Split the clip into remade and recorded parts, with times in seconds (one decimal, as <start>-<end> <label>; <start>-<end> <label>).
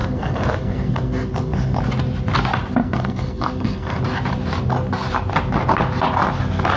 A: 0.0-1.8 remade; 1.8-2.8 recorded; 2.8-4.0 remade; 4.0-6.8 recorded